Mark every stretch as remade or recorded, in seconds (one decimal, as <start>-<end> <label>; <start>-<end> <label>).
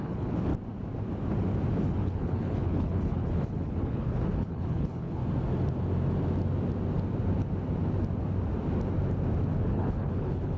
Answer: 0.0-0.5 remade; 0.5-1.7 recorded; 1.7-5.2 remade; 5.2-9.6 recorded; 9.6-10.6 remade